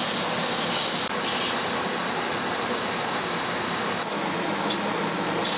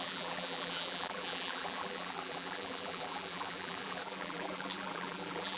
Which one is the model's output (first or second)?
second